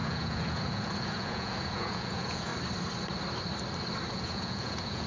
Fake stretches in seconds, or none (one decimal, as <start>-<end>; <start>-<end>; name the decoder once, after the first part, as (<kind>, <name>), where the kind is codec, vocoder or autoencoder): 0.0-2.5 (vocoder, Vocos); 4.1-5.1